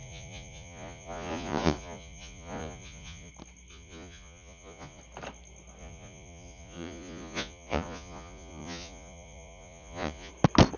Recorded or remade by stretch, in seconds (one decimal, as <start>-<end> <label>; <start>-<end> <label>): 0.0-3.3 remade; 3.3-3.7 recorded; 3.7-5.0 remade; 5.0-5.8 recorded; 5.8-10.3 remade; 10.3-10.8 recorded